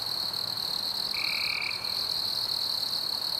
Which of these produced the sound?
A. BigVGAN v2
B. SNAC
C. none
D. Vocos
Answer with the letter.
C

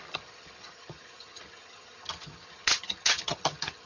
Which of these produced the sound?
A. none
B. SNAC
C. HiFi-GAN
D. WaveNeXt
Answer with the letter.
C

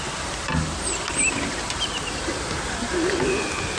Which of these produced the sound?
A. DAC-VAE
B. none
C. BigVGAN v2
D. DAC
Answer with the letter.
B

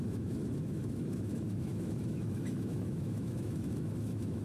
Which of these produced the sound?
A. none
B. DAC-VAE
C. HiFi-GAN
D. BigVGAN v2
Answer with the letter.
B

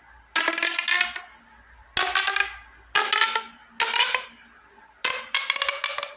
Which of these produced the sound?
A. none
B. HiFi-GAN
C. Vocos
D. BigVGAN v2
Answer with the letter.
A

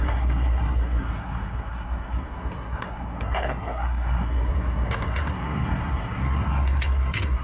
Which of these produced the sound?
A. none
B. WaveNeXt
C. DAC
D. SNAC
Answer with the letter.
D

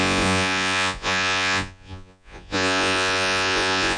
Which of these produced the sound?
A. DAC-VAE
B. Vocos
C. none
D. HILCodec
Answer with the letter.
B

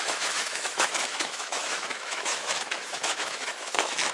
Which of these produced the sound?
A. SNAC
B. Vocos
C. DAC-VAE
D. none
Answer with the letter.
C